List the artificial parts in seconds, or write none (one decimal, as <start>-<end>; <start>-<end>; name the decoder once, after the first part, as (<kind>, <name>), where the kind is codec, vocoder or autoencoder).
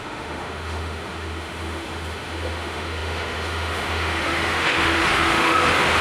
0.0-6.0 (autoencoder, DAC-VAE)